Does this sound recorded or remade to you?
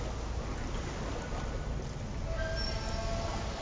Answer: recorded